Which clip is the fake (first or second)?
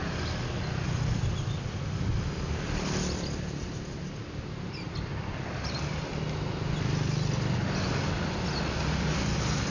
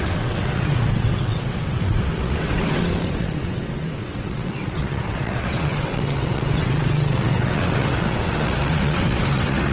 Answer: second